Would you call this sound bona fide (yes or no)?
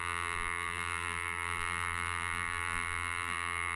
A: no